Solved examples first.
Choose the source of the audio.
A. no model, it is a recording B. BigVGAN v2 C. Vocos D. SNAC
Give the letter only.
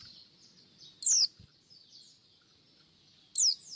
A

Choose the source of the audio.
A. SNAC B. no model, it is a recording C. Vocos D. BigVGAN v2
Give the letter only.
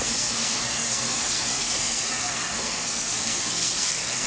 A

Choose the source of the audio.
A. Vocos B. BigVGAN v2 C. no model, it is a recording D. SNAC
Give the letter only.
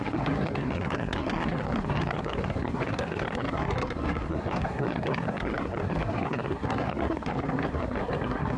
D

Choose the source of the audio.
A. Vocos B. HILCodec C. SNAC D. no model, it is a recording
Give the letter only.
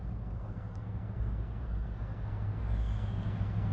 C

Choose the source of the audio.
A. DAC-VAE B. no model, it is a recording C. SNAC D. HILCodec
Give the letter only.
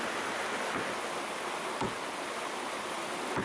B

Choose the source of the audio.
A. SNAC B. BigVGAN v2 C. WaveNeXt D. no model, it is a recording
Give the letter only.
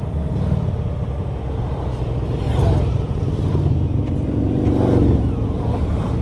D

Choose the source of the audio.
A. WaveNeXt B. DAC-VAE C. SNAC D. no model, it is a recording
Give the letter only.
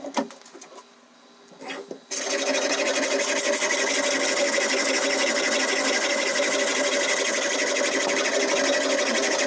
D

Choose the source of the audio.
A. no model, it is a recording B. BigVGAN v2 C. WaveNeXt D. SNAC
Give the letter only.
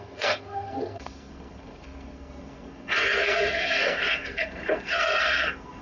D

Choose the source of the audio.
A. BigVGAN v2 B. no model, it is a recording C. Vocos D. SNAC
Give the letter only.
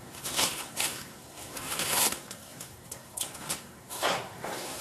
D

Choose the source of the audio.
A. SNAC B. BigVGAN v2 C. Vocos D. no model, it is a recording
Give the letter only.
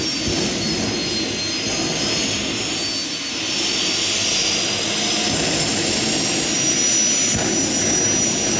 D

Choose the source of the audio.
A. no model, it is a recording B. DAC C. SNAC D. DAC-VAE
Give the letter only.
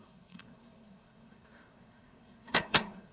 C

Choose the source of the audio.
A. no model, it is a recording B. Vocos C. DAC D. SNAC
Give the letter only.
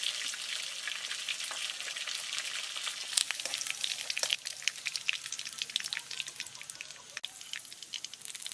A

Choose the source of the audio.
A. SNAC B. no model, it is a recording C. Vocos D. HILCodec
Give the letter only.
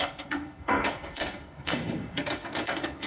A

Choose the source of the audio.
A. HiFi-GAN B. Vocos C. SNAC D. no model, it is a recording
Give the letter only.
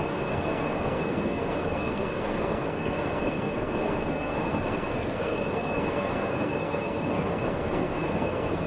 C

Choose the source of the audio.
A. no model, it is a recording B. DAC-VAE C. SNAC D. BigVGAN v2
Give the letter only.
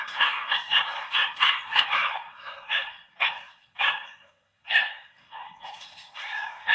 C